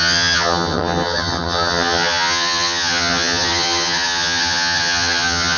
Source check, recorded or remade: remade